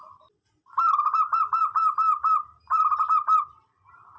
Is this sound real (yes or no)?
yes